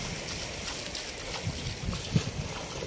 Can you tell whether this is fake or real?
real